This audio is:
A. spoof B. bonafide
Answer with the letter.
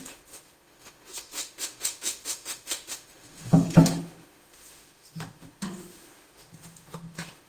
A